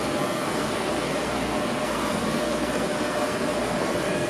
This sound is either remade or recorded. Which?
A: remade